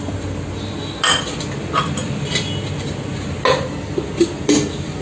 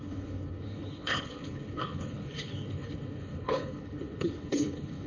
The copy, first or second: second